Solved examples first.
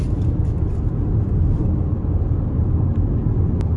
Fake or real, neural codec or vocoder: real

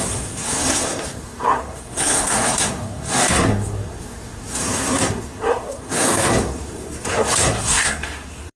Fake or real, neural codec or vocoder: fake, codec, SNAC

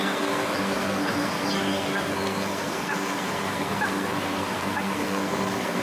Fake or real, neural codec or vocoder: fake, codec, SNAC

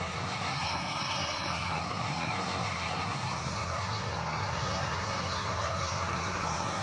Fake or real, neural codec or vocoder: fake, codec, SNAC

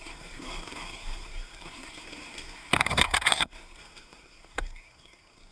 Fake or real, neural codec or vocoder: fake, codec, SNAC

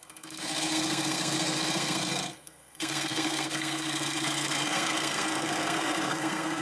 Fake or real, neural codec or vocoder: fake, codec, SNAC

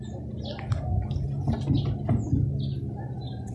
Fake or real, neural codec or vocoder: real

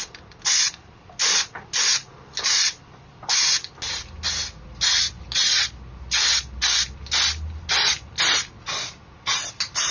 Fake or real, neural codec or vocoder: real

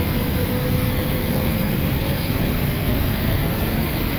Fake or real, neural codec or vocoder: fake, codec, SNAC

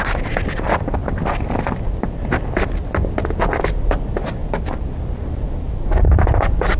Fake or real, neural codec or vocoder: real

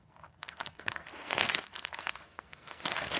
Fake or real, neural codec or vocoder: fake, codec, SNAC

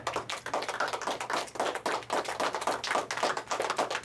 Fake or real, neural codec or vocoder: real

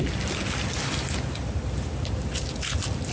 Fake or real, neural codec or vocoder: real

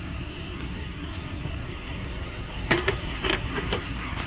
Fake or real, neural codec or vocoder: fake, codec, SNAC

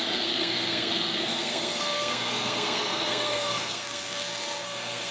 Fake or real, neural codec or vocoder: fake, codec, SNAC